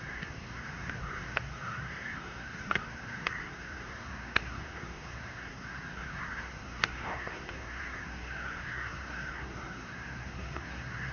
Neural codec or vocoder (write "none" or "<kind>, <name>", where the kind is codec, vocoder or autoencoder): codec, SNAC